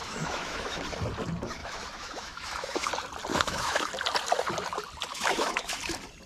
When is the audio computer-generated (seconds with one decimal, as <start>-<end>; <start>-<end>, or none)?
0.0-0.8; 1.6-2.9; 3.3-3.9; 5.1-5.8